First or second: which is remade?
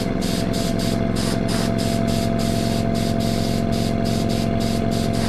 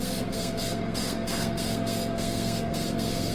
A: second